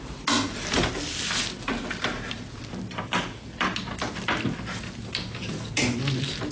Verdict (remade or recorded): recorded